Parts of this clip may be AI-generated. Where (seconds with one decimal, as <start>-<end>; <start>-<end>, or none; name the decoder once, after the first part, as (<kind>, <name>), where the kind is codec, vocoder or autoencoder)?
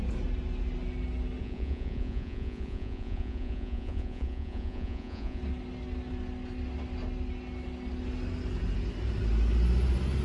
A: 1.4-5.4 (vocoder, Vocos)